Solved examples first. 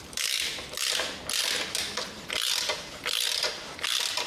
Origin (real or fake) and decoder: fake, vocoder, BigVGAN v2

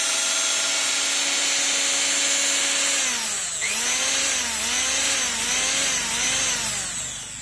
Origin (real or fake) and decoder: real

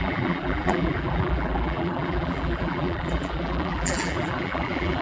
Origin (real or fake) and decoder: fake, vocoder, BigVGAN v2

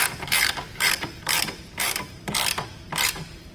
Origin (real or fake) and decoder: fake, vocoder, BigVGAN v2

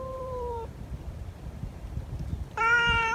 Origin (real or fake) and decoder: fake, vocoder, BigVGAN v2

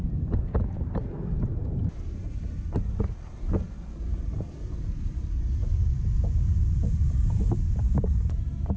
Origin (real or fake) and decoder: real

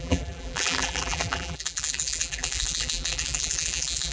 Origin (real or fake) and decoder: fake, vocoder, BigVGAN v2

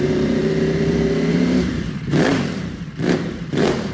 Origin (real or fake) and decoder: fake, vocoder, BigVGAN v2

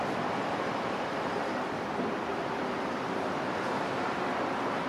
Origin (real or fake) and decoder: real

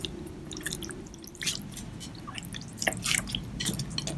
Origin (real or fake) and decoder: real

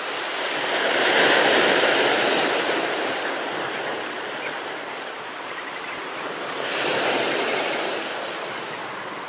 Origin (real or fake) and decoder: fake, vocoder, BigVGAN v2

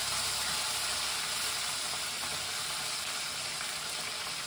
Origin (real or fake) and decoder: real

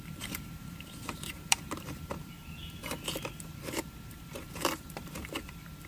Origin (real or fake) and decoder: fake, vocoder, BigVGAN v2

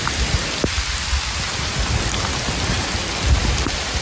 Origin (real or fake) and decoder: real